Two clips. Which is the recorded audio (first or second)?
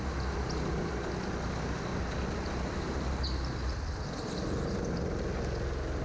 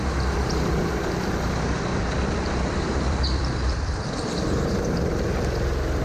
first